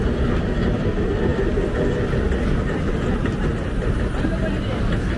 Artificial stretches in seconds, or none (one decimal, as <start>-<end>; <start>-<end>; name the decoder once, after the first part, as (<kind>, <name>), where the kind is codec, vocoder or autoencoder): none